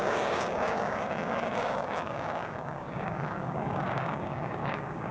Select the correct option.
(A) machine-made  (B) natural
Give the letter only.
A